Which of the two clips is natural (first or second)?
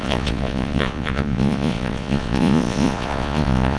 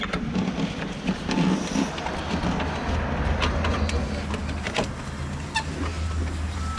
second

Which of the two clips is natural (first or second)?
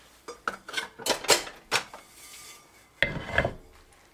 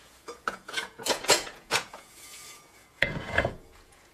first